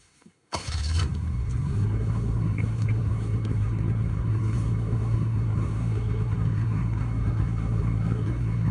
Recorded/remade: remade